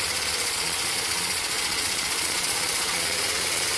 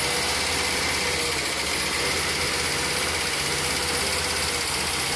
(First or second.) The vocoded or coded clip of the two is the first